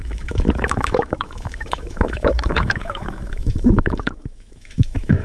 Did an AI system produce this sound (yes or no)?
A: yes